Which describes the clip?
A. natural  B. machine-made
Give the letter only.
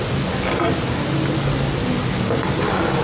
A